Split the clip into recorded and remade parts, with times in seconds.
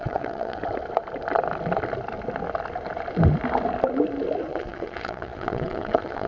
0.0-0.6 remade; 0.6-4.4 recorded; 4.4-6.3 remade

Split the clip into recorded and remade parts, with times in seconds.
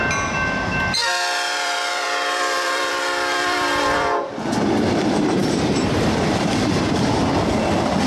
0.0-1.0 recorded; 1.0-4.3 remade; 4.3-5.4 recorded; 5.4-7.2 remade; 7.2-8.1 recorded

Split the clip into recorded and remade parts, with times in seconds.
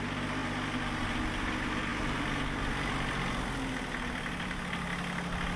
0.0-5.6 recorded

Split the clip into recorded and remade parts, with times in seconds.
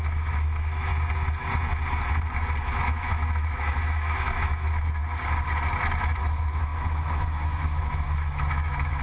0.0-0.9 remade; 0.9-2.6 recorded; 2.6-5.0 remade; 5.0-6.0 recorded; 6.0-9.0 remade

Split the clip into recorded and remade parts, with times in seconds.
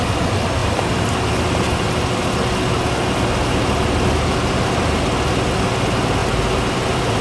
0.0-7.2 recorded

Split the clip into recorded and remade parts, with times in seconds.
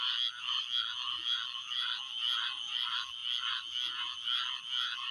0.0-5.1 recorded